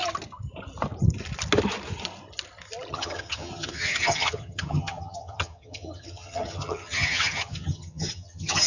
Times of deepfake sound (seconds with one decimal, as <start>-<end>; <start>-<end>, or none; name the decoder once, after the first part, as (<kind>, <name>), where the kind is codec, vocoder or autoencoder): 2.9-8.7 (vocoder, HiFi-GAN)

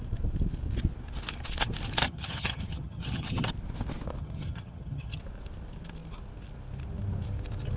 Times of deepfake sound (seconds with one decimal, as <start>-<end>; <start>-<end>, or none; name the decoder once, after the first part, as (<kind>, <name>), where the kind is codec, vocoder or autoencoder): 2.0-3.5 (vocoder, HiFi-GAN); 4.2-5.2

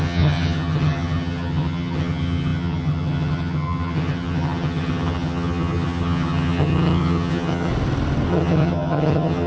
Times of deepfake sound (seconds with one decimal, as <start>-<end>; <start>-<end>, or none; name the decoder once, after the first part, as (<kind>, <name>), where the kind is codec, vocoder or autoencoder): 0.0-7.7 (vocoder, HiFi-GAN); 8.3-9.5

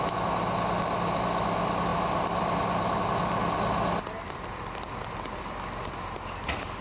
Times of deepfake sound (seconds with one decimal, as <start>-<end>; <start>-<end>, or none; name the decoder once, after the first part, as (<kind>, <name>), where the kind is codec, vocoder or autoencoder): none

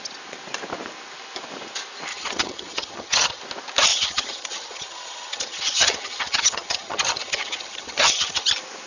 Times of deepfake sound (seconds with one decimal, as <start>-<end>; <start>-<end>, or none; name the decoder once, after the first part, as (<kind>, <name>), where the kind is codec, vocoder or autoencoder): 2.1-3.4 (vocoder, HiFi-GAN); 3.9-8.5

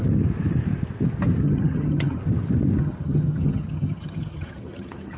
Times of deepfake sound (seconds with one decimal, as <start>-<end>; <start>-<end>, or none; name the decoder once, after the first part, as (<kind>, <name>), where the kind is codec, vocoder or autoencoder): 1.4-2.2 (vocoder, HiFi-GAN); 2.8-5.2